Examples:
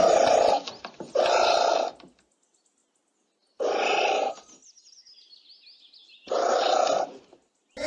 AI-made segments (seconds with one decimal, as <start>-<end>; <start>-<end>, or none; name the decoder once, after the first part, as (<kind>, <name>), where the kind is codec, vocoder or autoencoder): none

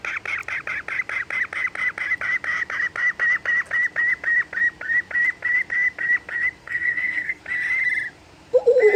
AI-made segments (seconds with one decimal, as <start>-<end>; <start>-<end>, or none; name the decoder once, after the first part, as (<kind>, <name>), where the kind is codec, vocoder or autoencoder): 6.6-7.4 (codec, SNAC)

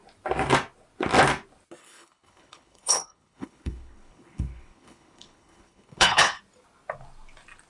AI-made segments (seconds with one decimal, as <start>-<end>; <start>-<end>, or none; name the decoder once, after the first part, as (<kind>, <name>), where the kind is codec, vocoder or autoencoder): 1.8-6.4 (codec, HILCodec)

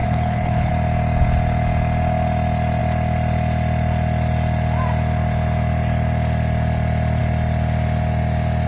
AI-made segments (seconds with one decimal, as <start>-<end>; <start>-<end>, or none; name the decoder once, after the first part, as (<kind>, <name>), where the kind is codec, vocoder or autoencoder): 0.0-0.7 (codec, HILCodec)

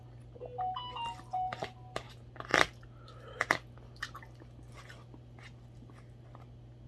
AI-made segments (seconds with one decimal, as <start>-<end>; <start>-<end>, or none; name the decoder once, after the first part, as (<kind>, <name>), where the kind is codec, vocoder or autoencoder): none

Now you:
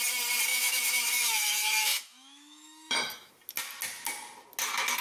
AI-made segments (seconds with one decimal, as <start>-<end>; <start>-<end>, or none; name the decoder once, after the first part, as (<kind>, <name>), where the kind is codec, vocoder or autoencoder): 0.5-3.3 (autoencoder, DAC-VAE)